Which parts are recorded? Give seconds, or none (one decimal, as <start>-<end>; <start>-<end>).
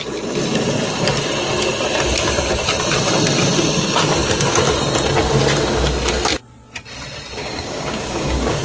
0.0-7.4